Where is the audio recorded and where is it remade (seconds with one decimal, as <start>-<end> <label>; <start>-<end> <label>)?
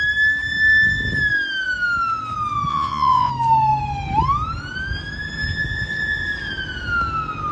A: 0.0-2.7 recorded; 2.7-3.3 remade; 3.3-7.5 recorded